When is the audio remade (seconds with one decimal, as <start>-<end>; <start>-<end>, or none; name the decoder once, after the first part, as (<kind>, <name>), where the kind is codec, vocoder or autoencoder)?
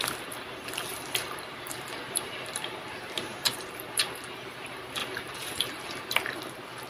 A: 0.9-4.2 (vocoder, BigVGAN v2); 5.0-5.5